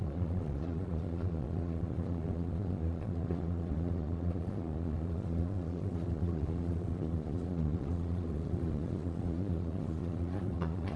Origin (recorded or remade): remade